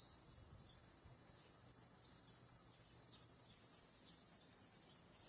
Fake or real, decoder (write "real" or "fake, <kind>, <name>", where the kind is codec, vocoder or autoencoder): real